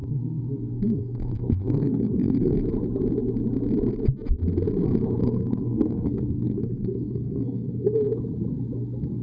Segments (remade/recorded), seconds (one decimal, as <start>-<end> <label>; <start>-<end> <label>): 0.0-2.6 remade; 2.6-5.2 recorded; 5.2-8.0 remade; 8.0-9.2 recorded